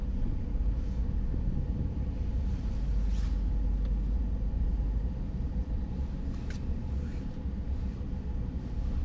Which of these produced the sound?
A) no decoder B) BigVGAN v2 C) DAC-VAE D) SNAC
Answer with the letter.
A